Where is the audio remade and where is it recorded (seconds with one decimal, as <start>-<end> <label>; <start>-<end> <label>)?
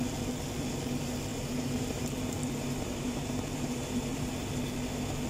0.0-1.3 recorded; 1.3-4.5 remade; 4.5-5.3 recorded